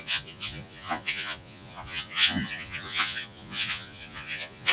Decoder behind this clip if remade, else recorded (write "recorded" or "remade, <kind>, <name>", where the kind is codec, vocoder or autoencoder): remade, vocoder, Vocos